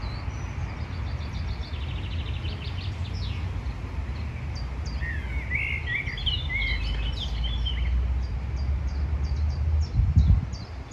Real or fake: real